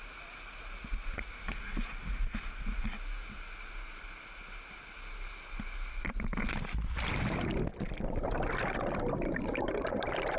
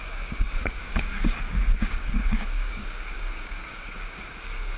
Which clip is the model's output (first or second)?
second